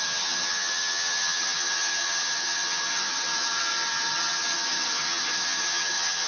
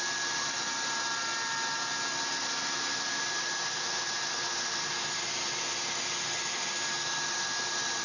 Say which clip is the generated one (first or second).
first